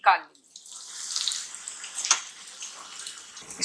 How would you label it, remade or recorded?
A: recorded